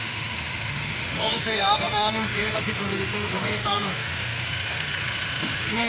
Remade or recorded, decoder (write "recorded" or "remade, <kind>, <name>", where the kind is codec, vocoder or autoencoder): remade, autoencoder, DAC-VAE